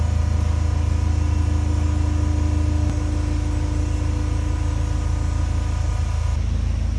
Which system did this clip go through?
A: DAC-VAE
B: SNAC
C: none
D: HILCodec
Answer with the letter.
C